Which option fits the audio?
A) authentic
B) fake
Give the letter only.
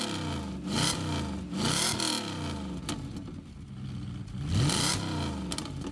A